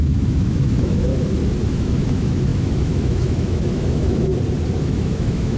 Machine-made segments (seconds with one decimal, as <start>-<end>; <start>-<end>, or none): 0.0-1.1; 1.6-4.3; 4.8-5.6